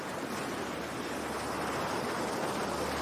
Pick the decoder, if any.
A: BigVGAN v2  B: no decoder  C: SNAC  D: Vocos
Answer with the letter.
B